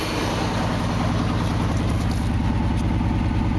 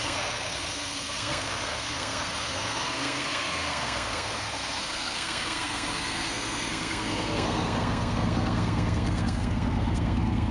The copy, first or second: second